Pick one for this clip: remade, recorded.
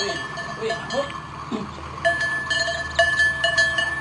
recorded